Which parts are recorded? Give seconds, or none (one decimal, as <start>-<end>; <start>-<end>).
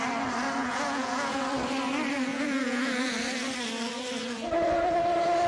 0.0-0.6; 1.4-2.3; 3.1-5.5